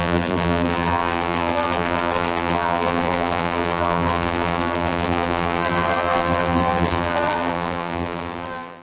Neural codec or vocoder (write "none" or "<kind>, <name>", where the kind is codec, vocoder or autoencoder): vocoder, BigVGAN v2